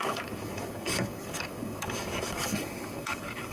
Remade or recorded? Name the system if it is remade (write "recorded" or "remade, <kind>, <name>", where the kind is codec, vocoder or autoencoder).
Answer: remade, codec, DAC